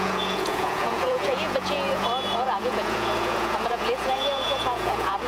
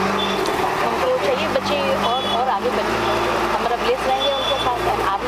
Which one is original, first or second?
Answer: second